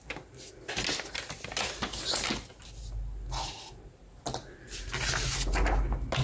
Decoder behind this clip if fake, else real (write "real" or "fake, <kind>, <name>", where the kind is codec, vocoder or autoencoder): real